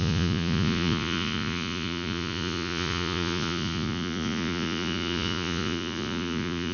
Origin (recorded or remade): remade